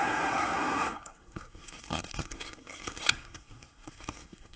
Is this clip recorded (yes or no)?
no